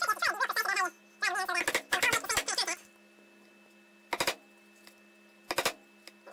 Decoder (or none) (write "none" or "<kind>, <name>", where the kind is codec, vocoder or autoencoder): none